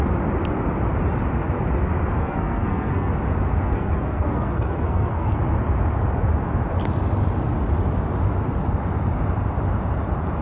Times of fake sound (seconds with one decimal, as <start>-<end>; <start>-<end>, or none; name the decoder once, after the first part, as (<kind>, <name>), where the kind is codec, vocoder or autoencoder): 2.2-3.1 (codec, SNAC); 3.6-5.4